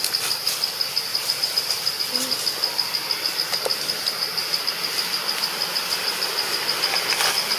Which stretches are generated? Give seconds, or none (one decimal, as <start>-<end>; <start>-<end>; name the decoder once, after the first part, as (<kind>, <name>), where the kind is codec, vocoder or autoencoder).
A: 1.1-1.7 (vocoder, BigVGAN v2)

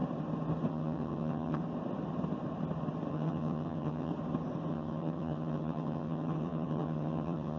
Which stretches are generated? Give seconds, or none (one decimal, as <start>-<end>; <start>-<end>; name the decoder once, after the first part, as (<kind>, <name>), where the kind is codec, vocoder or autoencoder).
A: 0.7-1.6 (vocoder, HiFi-GAN); 3.1-4.1; 4.7-7.6

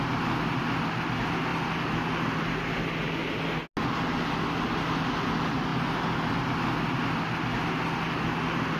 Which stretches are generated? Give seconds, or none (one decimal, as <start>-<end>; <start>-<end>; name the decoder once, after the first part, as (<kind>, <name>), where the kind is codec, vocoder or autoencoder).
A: none

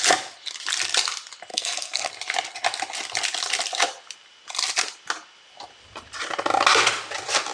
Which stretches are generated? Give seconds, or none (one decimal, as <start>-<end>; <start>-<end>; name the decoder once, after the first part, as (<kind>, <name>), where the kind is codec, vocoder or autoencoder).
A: 1.5-2.1 (codec, SNAC)

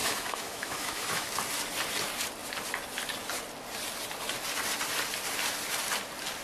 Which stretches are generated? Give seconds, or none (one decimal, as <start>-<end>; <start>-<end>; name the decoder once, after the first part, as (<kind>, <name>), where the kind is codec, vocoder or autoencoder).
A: 0.0-1.3 (autoencoder, DAC-VAE)

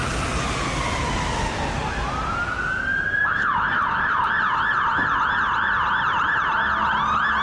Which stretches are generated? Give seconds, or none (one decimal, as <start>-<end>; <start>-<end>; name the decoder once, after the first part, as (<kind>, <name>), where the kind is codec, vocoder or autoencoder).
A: none

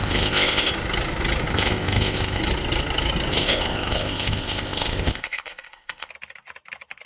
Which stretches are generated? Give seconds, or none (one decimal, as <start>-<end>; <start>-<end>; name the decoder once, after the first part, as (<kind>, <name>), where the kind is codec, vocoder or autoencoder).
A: 0.0-0.7 (codec, ZipCodec); 1.5-2.4; 3.3-6.1